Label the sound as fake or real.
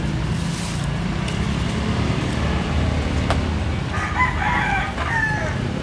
real